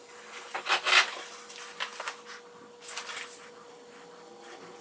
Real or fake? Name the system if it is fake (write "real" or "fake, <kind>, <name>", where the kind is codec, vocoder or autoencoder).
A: real